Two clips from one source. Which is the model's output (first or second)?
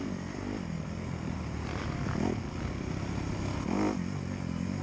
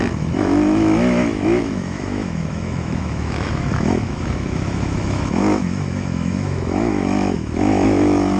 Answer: second